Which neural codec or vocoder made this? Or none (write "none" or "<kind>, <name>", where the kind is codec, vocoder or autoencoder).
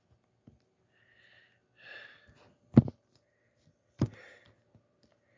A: none